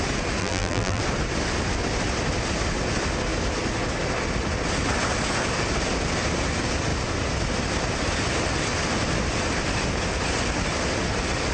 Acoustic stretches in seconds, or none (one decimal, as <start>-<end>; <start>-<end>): 0.0-0.4; 1.0-11.5